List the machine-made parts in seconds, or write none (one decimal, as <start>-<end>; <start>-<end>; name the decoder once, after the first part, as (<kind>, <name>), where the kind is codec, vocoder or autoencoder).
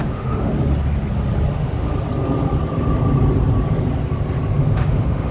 0.0-0.5 (autoencoder, DAC-VAE); 1.5-1.9; 4.6-5.3